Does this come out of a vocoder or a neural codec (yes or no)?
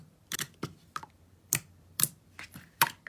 yes